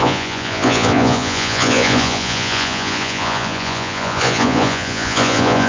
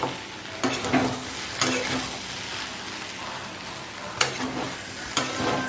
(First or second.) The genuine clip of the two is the second